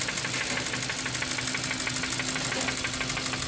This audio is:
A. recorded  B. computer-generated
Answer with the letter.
A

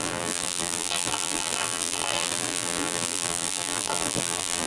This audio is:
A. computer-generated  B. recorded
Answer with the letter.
A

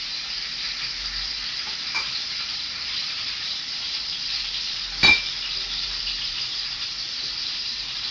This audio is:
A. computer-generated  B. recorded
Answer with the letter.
A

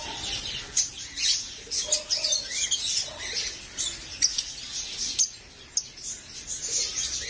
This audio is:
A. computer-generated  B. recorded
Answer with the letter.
B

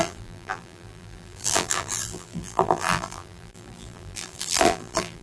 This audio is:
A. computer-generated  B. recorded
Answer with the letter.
A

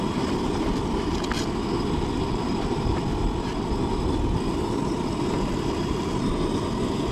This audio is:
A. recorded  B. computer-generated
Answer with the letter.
A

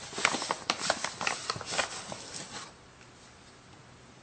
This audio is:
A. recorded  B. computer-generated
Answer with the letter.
A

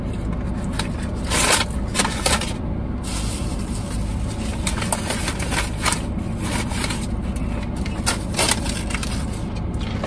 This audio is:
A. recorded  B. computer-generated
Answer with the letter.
A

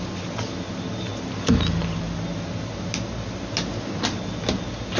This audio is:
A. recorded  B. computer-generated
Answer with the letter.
A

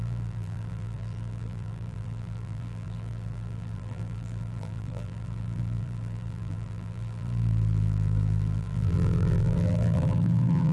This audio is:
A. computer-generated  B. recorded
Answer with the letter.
A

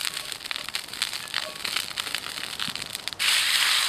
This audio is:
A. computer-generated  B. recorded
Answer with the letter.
A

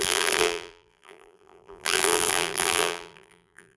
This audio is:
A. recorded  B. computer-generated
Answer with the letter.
B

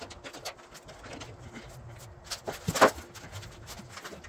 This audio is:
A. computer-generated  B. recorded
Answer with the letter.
B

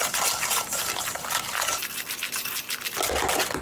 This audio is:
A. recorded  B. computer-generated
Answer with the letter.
A